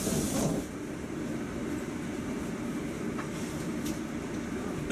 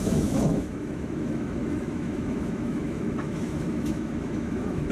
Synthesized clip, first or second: second